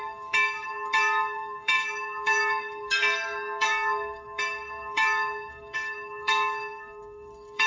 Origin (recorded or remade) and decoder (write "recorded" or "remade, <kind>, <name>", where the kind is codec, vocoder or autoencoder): remade, codec, DAC